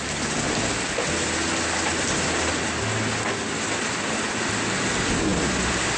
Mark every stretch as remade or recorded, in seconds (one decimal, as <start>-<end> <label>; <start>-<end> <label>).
0.0-6.0 recorded